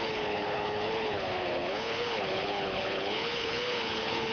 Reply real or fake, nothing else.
fake